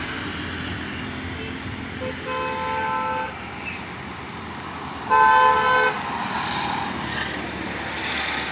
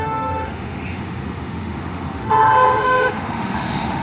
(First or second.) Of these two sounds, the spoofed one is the second